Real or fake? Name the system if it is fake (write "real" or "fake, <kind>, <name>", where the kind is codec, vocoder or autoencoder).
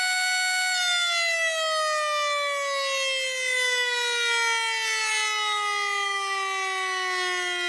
real